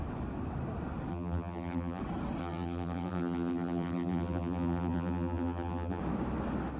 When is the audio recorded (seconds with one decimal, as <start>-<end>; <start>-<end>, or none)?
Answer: 0.0-1.1; 2.0-2.4; 6.0-6.8